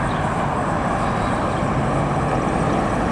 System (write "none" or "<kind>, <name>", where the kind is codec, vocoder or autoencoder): none